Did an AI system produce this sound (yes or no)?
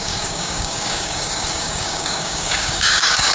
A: yes